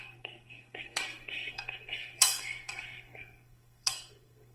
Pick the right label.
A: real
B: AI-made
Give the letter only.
B